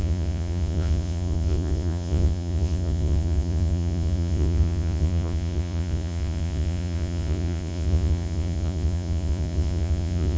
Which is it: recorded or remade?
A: remade